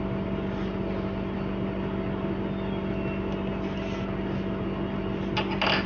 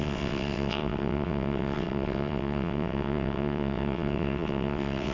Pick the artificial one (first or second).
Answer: second